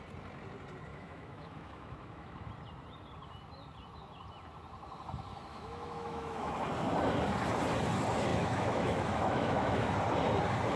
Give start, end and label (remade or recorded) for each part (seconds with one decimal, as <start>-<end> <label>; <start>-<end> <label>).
0.0-0.9 recorded; 0.9-2.5 remade; 2.5-5.5 recorded; 5.5-6.5 remade; 6.5-8.3 recorded; 8.3-9.9 remade; 9.9-10.8 recorded